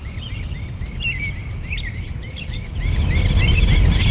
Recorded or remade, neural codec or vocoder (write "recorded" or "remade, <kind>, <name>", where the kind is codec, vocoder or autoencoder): recorded